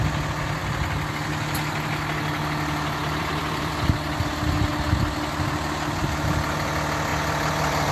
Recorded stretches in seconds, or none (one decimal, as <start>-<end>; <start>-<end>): 0.0-3.0; 3.7-7.1